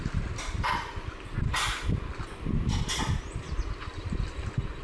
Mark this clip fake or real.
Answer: real